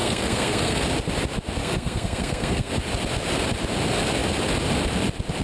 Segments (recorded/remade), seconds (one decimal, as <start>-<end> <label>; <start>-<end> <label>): 0.0-0.8 remade; 0.8-1.6 recorded; 1.6-2.7 remade; 2.7-5.4 recorded